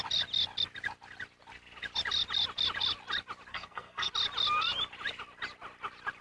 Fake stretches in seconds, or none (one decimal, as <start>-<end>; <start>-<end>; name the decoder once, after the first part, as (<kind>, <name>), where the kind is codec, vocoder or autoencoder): 3.5-4.1 (codec, SNAC)